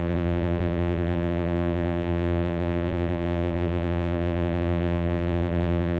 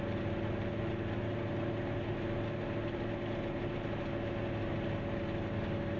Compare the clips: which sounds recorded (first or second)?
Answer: second